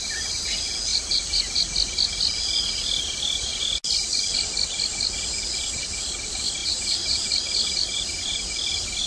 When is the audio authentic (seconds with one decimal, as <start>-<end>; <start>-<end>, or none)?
0.0-0.9; 1.7-6.6; 8.5-9.1